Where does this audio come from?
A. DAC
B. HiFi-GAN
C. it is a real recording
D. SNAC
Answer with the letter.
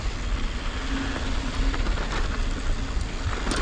C